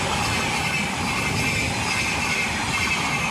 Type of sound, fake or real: real